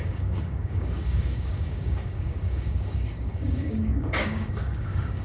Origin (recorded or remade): remade